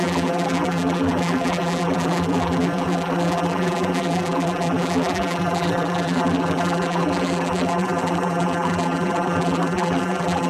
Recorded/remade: remade